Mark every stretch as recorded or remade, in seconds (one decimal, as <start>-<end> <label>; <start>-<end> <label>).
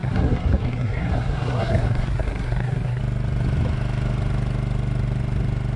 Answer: 0.0-3.0 remade; 3.0-5.8 recorded